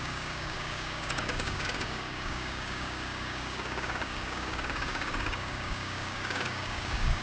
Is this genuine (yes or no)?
no